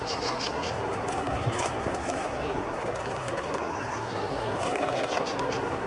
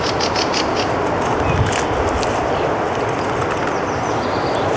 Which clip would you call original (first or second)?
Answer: second